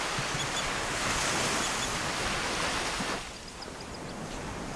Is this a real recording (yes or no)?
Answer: yes